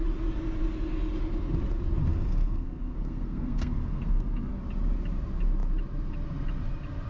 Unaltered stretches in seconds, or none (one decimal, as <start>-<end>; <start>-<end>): 0.0-2.1; 4.5-7.1